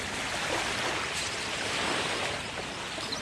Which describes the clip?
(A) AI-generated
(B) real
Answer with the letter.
B